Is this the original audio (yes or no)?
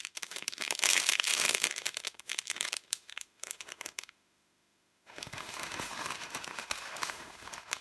no